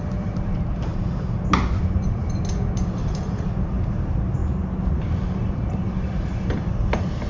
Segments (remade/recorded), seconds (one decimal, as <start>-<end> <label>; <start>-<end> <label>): 0.0-0.9 remade; 0.9-1.8 recorded; 1.8-2.2 remade; 2.2-3.2 recorded; 3.2-4.4 remade; 4.4-4.9 recorded; 4.9-7.3 remade